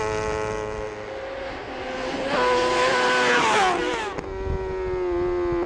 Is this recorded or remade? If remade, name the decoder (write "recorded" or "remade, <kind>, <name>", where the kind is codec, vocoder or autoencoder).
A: recorded